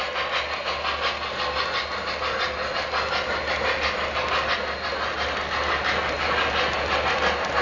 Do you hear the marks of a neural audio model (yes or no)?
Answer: no